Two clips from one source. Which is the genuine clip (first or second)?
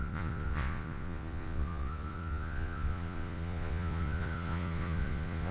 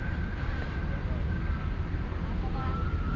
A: second